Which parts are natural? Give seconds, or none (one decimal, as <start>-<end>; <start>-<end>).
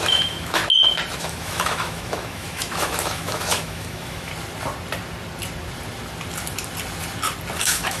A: 0.6-1.2; 4.3-7.6